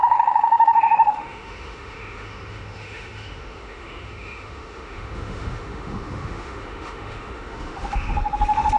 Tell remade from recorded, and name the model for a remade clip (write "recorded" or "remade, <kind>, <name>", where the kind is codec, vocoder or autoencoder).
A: remade, autoencoder, DAC-VAE